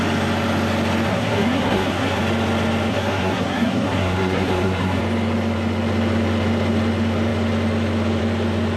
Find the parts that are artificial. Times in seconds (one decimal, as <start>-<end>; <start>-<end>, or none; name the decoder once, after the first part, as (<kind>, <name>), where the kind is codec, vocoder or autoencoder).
1.1-2.2 (codec, SNAC); 2.9-5.0